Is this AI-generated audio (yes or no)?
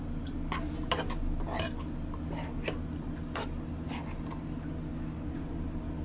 no